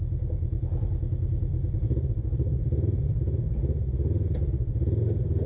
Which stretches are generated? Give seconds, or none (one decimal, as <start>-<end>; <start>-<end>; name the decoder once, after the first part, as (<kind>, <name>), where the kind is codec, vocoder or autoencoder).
none